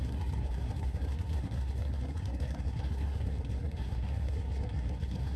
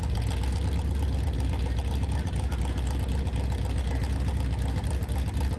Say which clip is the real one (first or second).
second